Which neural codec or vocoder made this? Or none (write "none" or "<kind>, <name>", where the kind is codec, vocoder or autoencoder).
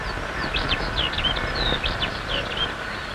none